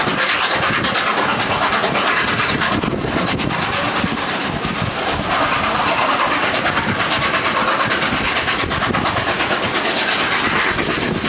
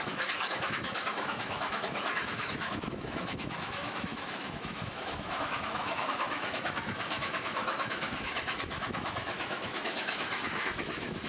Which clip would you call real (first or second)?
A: first